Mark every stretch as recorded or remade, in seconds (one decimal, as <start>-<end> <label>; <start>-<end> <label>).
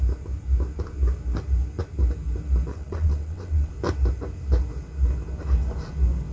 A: 0.0-2.7 recorded; 2.7-3.7 remade; 3.7-6.3 recorded